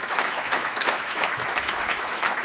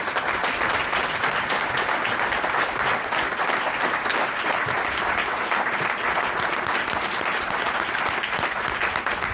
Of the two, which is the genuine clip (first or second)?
second